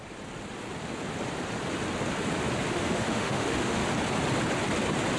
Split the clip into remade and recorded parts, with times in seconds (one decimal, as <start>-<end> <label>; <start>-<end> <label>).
0.0-2.7 recorded; 2.7-3.8 remade; 3.8-5.2 recorded